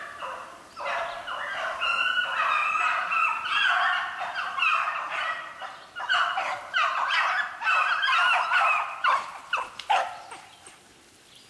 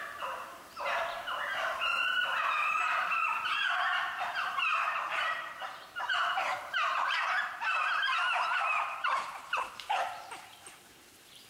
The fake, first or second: second